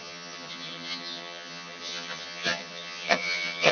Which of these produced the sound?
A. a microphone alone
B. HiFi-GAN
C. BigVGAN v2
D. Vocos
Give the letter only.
B